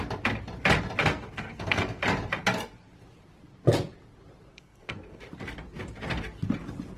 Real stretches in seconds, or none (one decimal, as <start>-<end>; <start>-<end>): 0.0-1.0; 2.0-4.5; 5.2-7.0

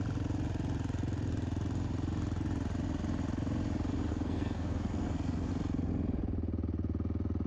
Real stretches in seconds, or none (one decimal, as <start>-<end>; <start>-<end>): 0.0-4.1; 5.5-7.5

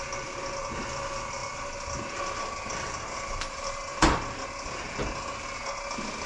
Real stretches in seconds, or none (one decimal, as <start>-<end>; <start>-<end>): 0.0-6.3

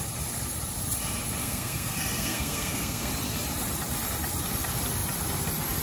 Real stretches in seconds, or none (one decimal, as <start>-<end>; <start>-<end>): 0.0-1.4; 3.1-5.8

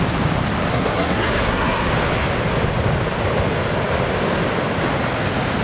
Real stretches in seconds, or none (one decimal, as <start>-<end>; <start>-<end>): 0.0-0.7; 1.9-5.6